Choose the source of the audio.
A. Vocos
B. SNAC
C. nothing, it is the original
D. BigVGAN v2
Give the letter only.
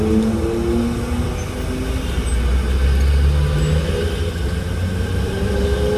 C